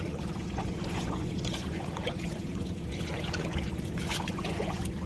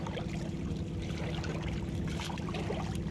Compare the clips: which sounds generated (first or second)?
first